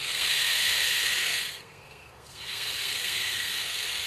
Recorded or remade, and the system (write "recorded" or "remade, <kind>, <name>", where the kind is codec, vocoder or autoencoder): remade, codec, SNAC